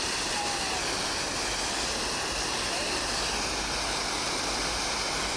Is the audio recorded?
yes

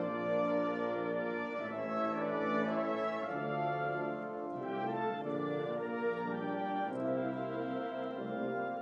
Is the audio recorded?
yes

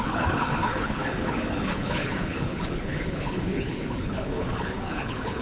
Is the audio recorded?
no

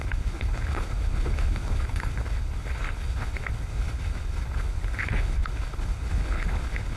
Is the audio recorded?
no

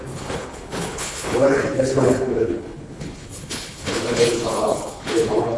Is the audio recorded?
no